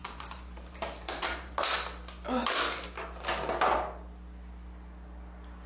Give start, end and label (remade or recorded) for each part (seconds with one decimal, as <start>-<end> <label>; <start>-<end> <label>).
0.0-1.6 remade; 1.6-5.7 recorded

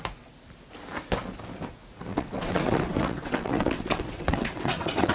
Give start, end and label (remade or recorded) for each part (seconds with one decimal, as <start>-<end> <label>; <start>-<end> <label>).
0.0-2.1 recorded; 2.1-5.1 remade

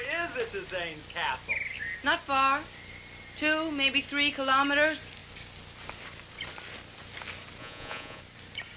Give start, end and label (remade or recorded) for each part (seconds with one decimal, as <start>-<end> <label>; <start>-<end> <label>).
0.0-7.6 recorded; 7.6-8.2 remade; 8.2-8.8 recorded